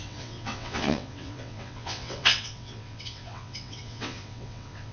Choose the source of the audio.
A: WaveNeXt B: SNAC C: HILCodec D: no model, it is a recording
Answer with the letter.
A